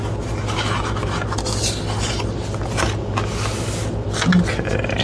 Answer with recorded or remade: recorded